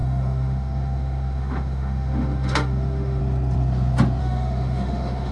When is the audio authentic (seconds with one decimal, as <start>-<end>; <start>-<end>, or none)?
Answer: 3.2-4.2

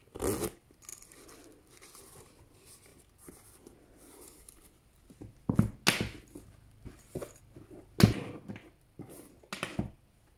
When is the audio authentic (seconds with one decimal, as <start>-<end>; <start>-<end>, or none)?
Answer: 0.0-10.4

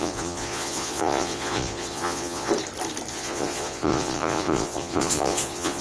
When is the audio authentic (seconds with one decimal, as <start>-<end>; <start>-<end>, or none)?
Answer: 2.5-3.1

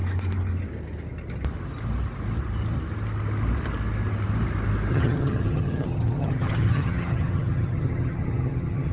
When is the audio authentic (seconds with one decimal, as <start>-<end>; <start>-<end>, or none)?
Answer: 0.0-4.9